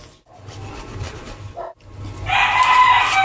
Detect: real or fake real